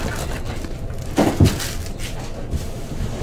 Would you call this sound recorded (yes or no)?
yes